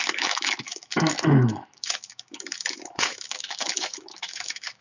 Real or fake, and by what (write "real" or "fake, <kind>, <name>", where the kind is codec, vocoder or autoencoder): fake, autoencoder, DAC-VAE